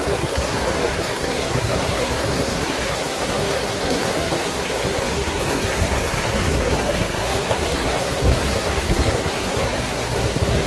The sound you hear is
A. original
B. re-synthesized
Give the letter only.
B